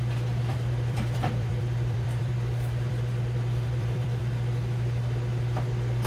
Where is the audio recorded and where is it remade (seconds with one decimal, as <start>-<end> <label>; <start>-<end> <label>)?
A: 0.0-0.5 recorded; 0.5-4.2 remade; 4.2-6.1 recorded